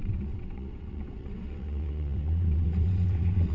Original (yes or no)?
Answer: no